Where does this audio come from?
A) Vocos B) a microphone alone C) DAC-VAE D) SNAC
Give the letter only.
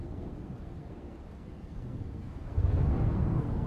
D